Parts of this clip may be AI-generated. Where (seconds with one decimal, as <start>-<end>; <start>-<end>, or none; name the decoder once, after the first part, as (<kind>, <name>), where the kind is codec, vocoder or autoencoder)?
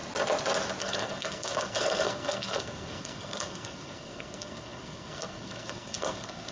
0.8-6.5 (codec, SNAC)